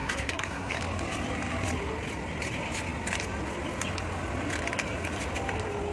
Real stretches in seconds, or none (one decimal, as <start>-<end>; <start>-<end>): 0.8-5.9